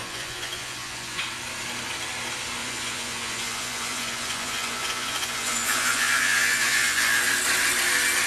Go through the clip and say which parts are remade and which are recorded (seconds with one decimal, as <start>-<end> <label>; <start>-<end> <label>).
0.0-1.2 remade; 1.2-2.6 recorded; 2.6-7.2 remade; 7.2-8.3 recorded